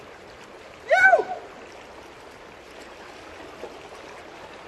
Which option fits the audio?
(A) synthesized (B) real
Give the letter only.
B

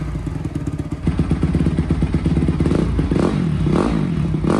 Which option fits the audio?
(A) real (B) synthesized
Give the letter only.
A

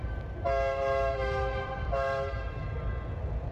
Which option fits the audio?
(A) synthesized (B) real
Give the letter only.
B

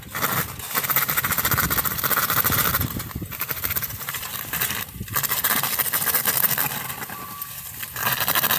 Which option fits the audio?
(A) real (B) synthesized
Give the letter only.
A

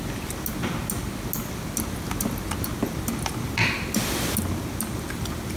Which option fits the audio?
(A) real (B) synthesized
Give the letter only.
A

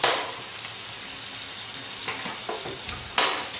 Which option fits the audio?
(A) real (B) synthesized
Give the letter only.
A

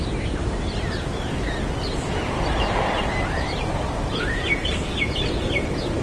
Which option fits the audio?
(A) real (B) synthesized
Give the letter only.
A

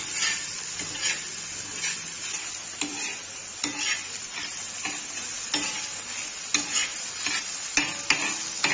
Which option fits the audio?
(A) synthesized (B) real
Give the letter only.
B